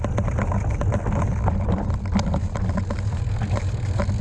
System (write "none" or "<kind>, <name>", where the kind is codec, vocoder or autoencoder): none